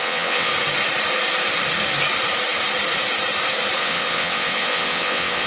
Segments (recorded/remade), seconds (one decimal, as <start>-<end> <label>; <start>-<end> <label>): 0.0-0.5 remade; 0.5-3.8 recorded; 3.8-5.5 remade